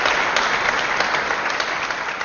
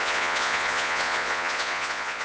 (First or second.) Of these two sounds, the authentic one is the first